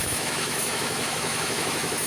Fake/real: fake